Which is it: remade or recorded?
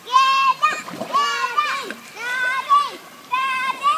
remade